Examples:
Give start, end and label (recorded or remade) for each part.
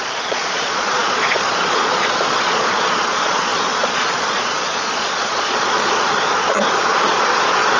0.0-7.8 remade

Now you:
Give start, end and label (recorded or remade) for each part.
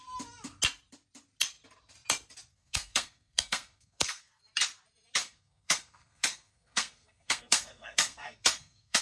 0.0-2.5 recorded; 2.5-4.4 remade; 4.4-5.2 recorded; 5.2-9.0 remade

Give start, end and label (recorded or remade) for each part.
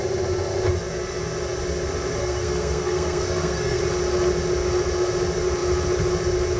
0.0-2.2 recorded; 2.2-3.8 remade; 3.8-6.6 recorded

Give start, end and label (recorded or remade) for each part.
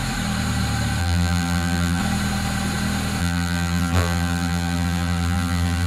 0.0-1.0 recorded; 1.0-2.0 remade; 2.0-3.2 recorded; 3.2-5.9 remade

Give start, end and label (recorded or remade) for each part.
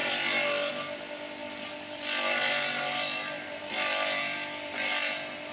0.0-0.7 remade; 0.7-1.4 recorded; 1.4-4.7 remade; 4.7-5.5 recorded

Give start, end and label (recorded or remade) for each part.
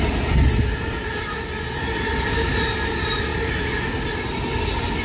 0.0-5.0 recorded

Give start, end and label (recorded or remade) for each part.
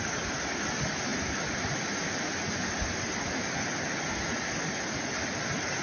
0.0-5.8 recorded